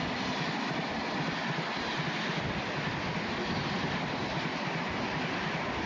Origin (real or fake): real